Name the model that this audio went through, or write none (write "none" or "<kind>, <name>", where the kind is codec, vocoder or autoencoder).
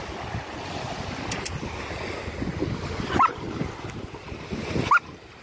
none